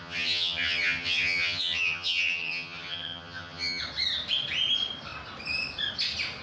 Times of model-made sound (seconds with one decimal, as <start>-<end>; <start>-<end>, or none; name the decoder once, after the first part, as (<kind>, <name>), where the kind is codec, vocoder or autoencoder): 0.0-3.8 (vocoder, HiFi-GAN)